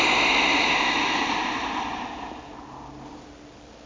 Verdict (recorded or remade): recorded